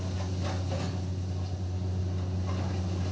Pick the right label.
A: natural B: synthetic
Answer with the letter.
A